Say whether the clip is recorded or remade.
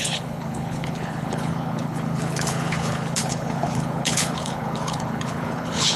remade